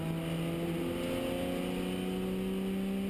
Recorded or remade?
recorded